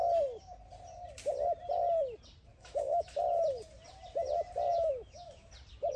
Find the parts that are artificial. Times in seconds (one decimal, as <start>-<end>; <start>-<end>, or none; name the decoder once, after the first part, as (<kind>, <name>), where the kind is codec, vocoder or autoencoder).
2.5-3.2 (autoencoder, DAC-VAE); 4.7-5.5